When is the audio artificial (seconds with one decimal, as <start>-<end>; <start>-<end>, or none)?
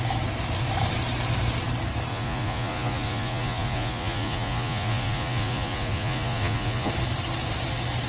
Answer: 2.1-6.9